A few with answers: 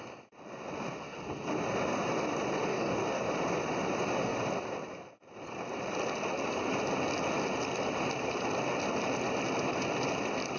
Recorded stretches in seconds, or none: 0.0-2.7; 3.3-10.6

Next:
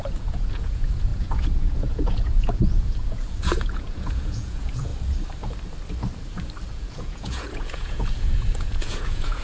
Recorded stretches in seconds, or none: 4.9-6.7